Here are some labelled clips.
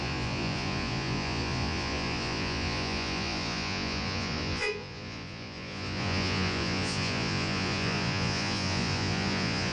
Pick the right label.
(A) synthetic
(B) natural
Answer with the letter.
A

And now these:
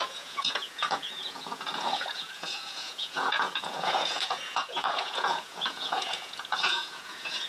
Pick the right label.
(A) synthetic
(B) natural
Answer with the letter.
A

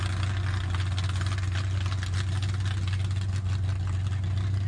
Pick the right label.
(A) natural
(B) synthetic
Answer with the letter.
A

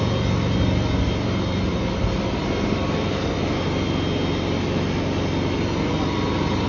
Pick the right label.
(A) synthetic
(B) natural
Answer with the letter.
B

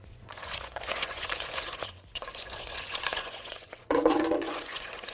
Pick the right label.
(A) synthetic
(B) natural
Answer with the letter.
A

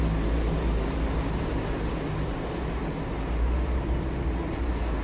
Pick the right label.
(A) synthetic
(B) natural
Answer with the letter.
B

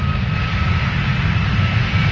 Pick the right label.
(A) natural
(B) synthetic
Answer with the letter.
A